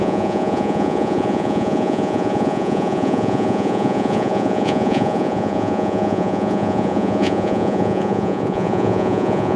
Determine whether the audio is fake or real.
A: fake